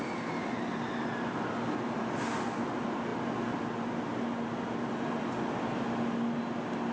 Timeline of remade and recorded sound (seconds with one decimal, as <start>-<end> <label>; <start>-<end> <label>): 0.0-6.9 recorded